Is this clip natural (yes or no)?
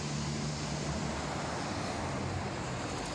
yes